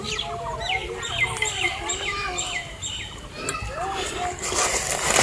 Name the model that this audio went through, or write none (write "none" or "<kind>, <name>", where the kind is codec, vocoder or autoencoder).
vocoder, BigVGAN v2